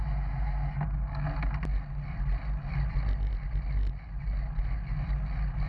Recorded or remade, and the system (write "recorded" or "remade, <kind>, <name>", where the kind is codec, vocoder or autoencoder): recorded